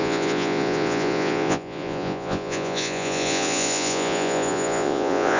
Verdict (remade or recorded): remade